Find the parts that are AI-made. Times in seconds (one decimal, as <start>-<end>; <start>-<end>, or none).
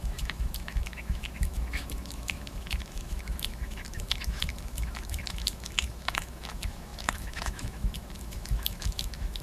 0.0-9.4